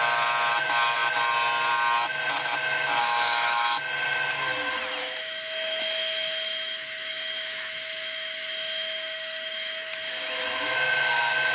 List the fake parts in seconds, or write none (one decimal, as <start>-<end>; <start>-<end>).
3.0-3.8; 5.0-10.1